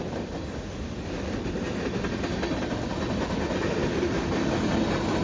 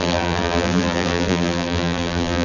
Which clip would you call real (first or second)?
first